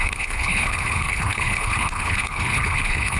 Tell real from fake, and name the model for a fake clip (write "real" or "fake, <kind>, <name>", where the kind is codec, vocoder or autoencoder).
fake, codec, HILCodec